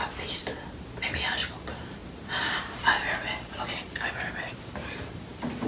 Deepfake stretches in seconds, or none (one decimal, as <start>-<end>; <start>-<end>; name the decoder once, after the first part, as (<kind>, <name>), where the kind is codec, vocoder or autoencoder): 0.0-0.4 (vocoder, BigVGAN v2); 1.0-5.7